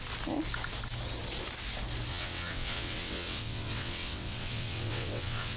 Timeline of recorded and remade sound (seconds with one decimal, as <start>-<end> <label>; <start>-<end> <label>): 0.0-2.1 recorded; 2.1-5.6 remade